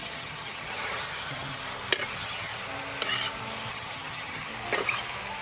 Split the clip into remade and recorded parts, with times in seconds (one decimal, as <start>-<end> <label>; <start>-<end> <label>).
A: 0.0-1.6 remade; 1.6-2.1 recorded; 2.1-2.5 remade; 2.5-3.7 recorded; 3.7-4.5 remade; 4.5-5.4 recorded